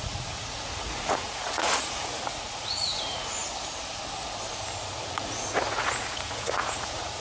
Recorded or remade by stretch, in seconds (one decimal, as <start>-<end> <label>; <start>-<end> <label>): 0.0-3.4 remade; 3.4-4.8 recorded; 4.8-7.2 remade